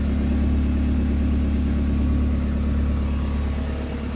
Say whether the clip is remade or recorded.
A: recorded